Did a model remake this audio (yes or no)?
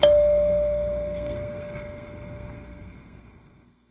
yes